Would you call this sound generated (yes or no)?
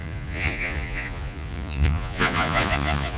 yes